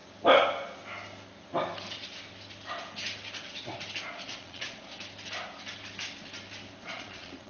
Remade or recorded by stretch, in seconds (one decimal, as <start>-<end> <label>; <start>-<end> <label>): 0.0-4.0 recorded; 4.0-4.9 remade; 4.9-6.8 recorded; 6.8-7.5 remade